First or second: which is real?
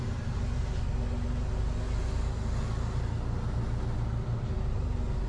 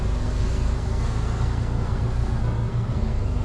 first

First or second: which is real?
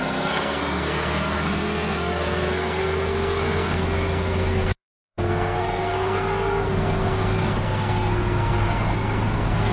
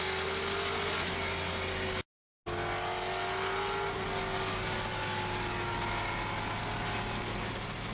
second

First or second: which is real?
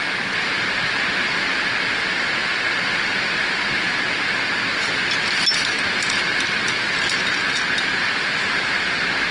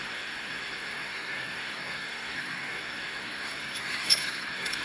first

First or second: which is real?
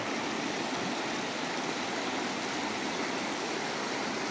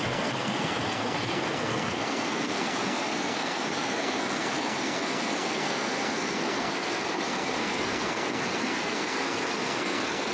first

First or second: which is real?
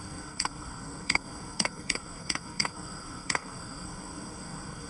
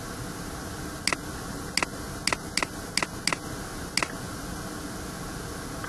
second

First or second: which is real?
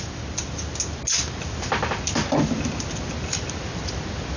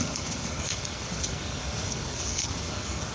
first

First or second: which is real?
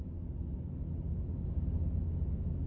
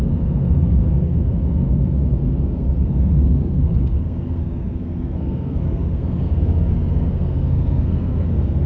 first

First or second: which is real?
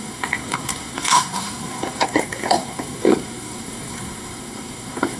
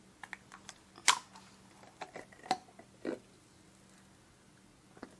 second